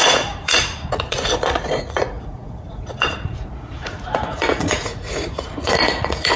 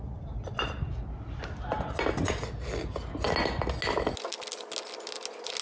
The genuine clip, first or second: second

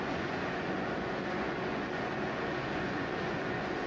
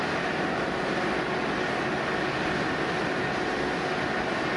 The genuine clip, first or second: second